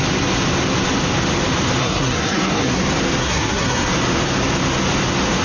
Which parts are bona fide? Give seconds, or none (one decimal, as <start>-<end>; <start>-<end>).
0.0-1.8; 2.8-3.2; 3.9-5.4